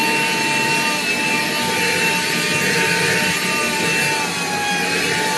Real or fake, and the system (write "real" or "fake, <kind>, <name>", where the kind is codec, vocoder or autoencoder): real